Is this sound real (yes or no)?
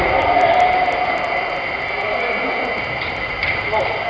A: yes